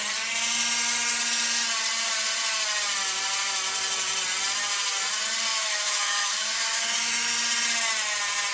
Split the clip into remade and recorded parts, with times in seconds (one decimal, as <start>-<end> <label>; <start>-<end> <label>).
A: 0.0-5.5 recorded; 5.5-7.3 remade; 7.3-8.5 recorded